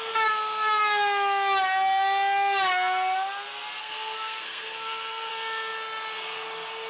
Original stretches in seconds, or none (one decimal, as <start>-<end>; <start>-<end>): 0.0-3.8; 5.3-6.9